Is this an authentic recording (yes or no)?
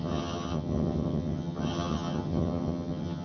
no